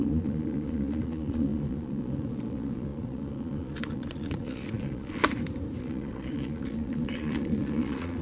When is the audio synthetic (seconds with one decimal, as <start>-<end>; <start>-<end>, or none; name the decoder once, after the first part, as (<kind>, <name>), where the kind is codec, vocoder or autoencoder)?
0.0-5.2 (vocoder, Vocos); 5.8-8.2